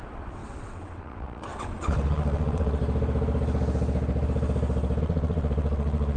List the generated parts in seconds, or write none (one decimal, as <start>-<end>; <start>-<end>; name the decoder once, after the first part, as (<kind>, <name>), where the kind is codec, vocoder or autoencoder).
0.0-2.8 (vocoder, WaveNeXt); 5.0-6.2